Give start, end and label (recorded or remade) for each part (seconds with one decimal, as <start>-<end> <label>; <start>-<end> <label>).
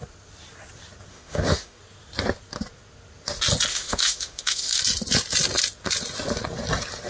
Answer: 0.0-1.1 recorded; 1.1-1.8 remade; 1.8-3.7 recorded; 3.7-4.8 remade; 4.8-7.1 recorded